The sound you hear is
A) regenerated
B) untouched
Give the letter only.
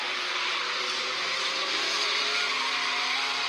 B